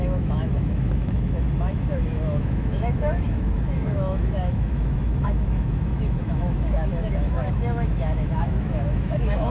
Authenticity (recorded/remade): remade